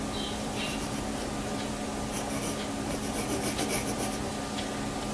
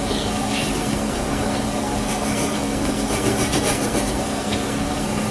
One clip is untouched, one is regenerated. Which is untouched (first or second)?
first